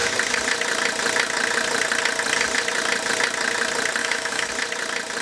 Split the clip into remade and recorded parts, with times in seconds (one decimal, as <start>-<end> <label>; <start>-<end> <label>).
0.0-4.0 recorded; 4.0-4.5 remade; 4.5-5.2 recorded